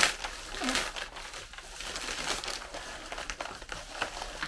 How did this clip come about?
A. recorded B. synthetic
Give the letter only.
A